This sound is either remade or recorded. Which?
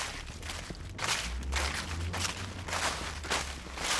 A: recorded